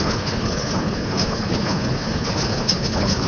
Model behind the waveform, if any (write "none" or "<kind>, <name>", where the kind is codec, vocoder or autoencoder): codec, HILCodec